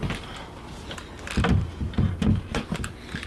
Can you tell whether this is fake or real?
real